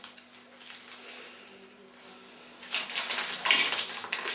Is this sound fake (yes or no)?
no